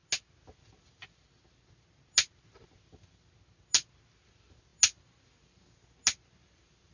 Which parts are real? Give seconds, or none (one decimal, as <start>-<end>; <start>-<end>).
0.0-6.9